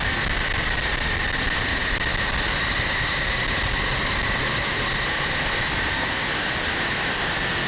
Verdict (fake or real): real